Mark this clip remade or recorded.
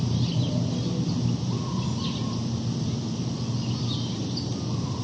recorded